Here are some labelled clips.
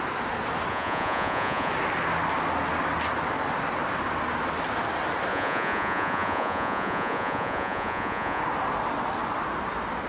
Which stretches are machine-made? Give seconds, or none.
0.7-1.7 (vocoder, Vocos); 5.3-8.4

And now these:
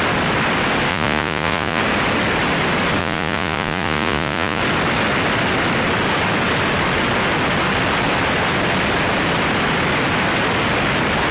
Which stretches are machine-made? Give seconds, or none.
0.9-1.8 (vocoder, Vocos); 3.0-4.6

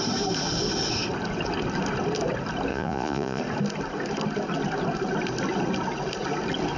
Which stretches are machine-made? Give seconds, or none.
2.7-3.4 (vocoder, Vocos)

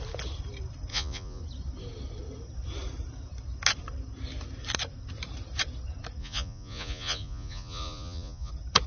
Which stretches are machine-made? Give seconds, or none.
0.9-1.4 (vocoder, Vocos); 6.2-8.5

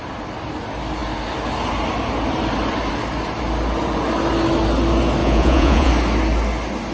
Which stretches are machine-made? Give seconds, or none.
5.2-5.9 (vocoder, Vocos)

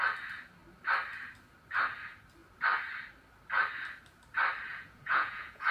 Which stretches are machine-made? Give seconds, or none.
4.7-5.7 (vocoder, Vocos)